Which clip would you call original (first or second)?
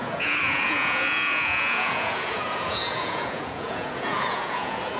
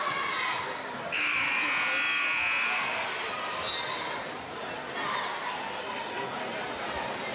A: second